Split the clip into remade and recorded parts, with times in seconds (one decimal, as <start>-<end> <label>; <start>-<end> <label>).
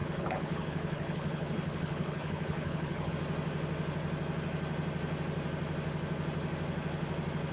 0.0-3.1 remade; 3.1-7.5 recorded